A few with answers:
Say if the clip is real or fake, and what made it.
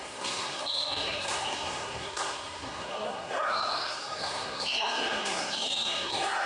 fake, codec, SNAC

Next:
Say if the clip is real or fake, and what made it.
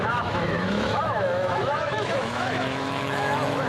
fake, autoencoder, DAC-VAE